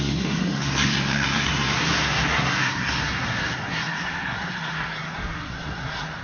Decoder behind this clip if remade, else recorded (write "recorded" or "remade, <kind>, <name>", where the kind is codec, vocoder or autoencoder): remade, codec, SNAC